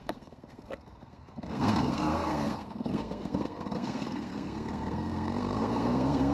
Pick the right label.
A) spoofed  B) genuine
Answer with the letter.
A